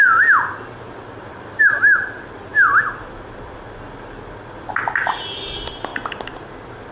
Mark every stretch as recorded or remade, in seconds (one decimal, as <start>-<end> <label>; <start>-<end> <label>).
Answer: 0.0-6.9 recorded